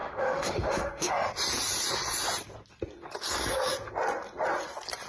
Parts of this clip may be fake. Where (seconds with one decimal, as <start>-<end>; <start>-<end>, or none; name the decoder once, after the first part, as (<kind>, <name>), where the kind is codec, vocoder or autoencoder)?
0.0-1.1 (autoencoder, DAC-VAE)